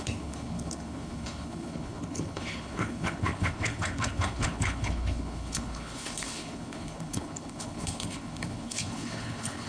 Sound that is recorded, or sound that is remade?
remade